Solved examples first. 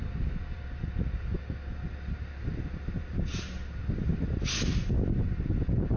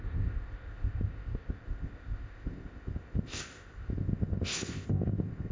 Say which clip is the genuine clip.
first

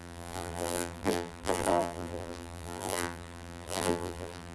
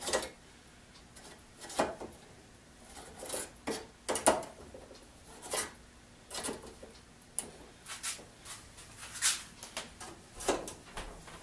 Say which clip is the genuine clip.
second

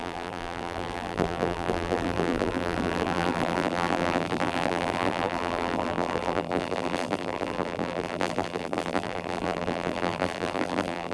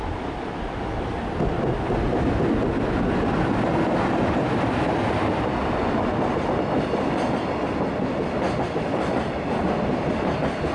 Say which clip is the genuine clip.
second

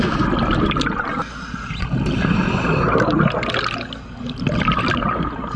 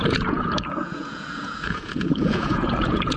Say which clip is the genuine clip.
first